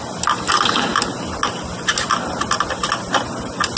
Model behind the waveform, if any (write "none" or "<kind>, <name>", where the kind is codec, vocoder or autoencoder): none